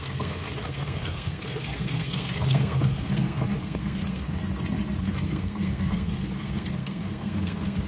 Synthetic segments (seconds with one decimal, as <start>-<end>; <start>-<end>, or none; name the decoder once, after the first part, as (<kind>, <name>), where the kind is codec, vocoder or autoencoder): 0.0-4.4 (codec, SNAC); 5.0-7.9